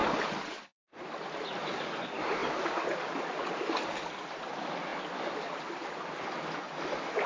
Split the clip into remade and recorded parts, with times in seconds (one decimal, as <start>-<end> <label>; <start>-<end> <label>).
0.0-7.3 recorded